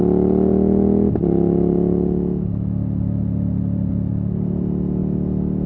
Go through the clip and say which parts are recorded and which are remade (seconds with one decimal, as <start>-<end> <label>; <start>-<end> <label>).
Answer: 0.0-5.7 recorded